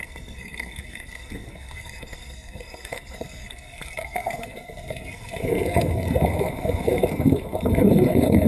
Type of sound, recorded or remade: remade